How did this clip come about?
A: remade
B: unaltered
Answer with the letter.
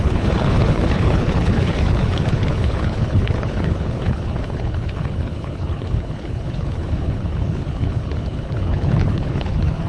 A